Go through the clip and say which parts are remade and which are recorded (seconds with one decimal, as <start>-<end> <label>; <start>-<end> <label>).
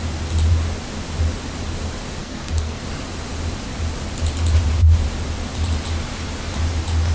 0.0-2.2 recorded; 2.2-2.8 remade; 2.8-7.1 recorded